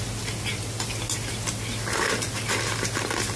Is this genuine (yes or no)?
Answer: yes